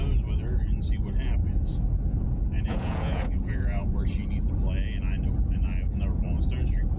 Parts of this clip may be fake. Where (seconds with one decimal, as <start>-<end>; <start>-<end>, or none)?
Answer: 1.4-4.0